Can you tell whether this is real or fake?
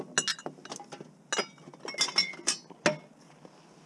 real